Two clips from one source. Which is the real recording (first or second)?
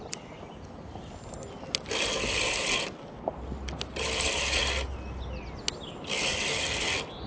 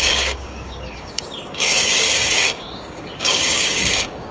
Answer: first